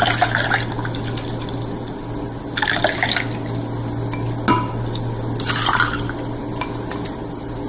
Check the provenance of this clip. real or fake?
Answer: real